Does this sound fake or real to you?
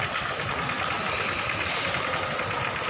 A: real